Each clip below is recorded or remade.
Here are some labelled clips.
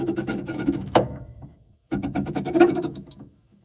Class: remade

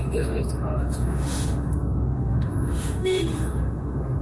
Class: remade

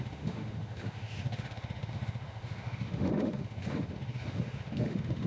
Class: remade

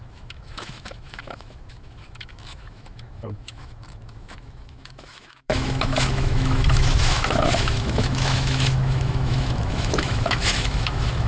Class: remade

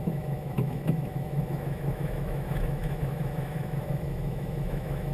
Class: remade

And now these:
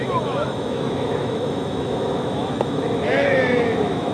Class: remade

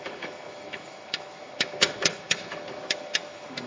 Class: remade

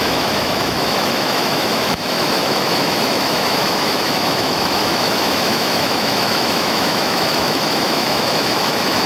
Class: remade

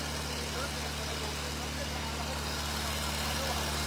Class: recorded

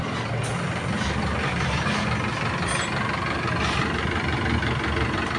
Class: recorded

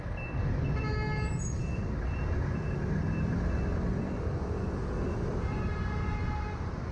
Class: recorded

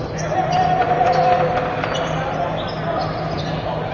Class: recorded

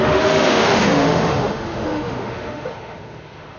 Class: remade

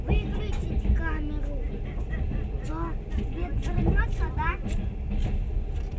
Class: recorded